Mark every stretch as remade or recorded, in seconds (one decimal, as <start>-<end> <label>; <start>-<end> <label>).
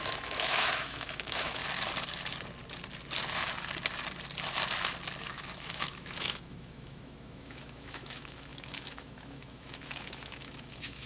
0.0-1.6 remade; 1.6-5.2 recorded; 5.2-11.1 remade